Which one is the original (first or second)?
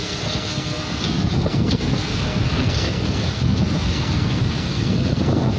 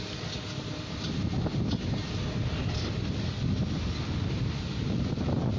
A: second